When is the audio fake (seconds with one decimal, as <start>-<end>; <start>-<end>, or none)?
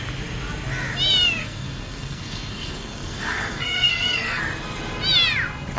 1.4-4.4